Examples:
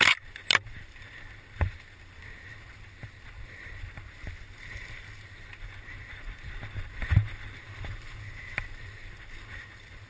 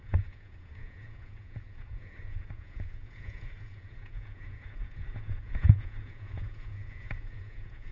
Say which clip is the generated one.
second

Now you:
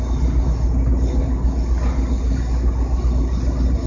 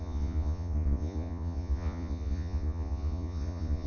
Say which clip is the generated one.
second